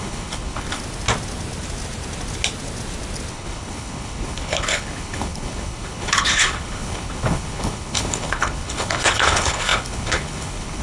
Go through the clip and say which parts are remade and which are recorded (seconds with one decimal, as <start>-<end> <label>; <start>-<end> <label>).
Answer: 0.0-0.8 remade; 0.8-3.3 recorded; 3.3-10.8 remade